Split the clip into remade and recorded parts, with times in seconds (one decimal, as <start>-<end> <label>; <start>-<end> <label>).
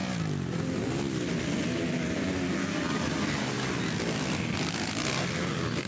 0.0-5.9 recorded